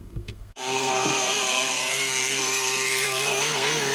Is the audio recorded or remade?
remade